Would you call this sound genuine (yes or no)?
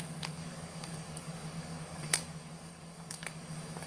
no